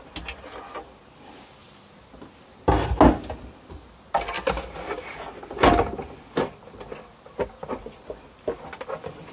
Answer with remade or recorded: recorded